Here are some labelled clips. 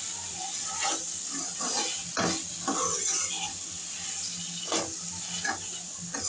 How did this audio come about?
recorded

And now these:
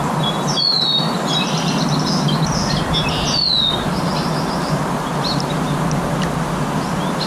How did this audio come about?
recorded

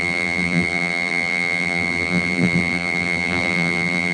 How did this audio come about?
remade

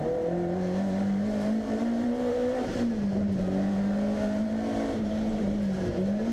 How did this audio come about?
remade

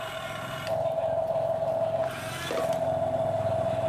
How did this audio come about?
recorded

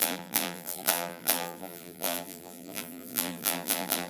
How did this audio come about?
remade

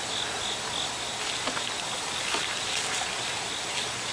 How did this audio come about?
recorded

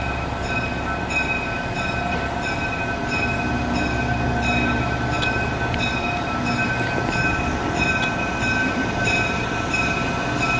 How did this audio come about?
recorded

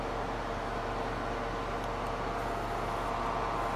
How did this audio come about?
recorded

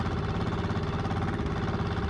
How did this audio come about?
recorded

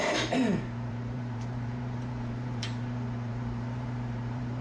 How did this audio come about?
remade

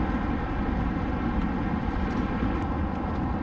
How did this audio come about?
recorded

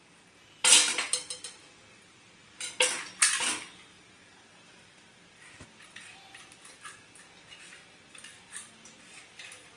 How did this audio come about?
remade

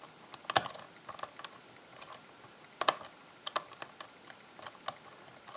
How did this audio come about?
recorded